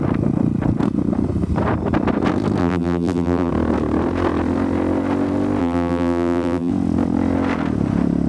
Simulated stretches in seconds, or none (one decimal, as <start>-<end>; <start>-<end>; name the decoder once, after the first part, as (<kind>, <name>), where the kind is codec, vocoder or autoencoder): 2.6-3.5 (vocoder, BigVGAN v2); 5.6-6.7